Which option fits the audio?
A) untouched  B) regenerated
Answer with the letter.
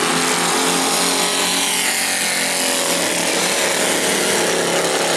A